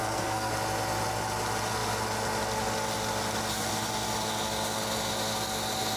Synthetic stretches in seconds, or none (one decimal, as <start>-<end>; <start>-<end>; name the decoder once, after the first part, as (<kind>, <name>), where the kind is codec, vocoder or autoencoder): 0.0-0.5 (codec, SNAC)